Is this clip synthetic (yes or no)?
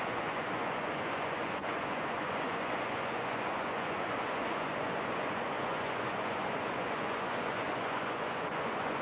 yes